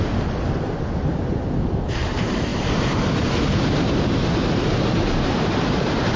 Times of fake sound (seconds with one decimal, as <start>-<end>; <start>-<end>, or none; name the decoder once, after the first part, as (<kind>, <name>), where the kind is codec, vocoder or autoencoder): 0.0-1.3 (vocoder, BigVGAN v2); 2.0-6.2